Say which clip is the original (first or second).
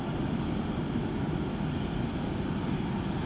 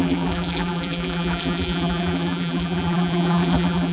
first